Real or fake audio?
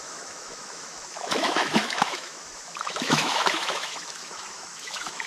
fake